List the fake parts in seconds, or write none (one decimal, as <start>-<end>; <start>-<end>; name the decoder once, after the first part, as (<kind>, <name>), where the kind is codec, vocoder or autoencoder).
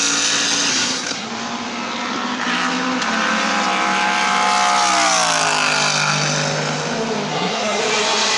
0.7-1.3 (codec, SNAC); 7.3-7.8